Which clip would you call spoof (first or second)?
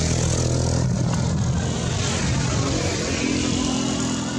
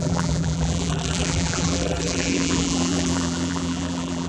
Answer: second